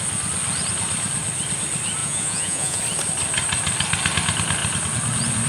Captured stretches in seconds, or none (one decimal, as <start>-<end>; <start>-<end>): 0.0-2.0; 2.8-5.5